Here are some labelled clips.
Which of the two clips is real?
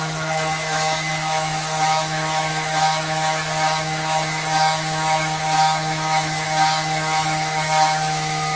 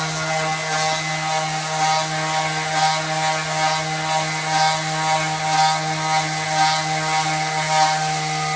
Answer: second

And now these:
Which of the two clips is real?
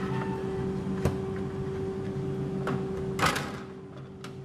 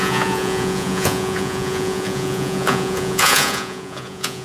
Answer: first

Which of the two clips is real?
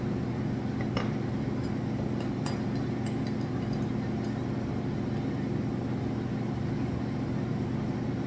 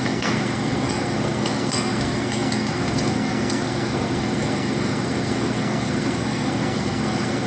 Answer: first